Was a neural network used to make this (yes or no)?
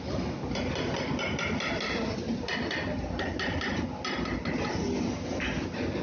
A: no